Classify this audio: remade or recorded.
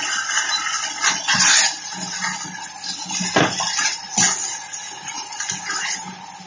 recorded